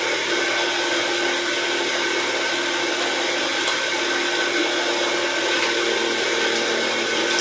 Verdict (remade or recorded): recorded